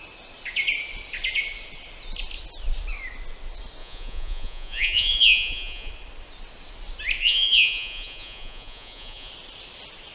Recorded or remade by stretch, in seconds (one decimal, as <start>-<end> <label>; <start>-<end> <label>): 0.0-3.8 recorded; 3.8-5.9 remade; 5.9-7.2 recorded; 7.2-9.3 remade; 9.3-10.1 recorded